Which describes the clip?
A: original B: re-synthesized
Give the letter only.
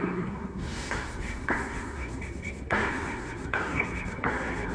B